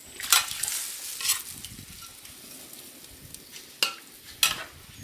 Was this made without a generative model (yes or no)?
yes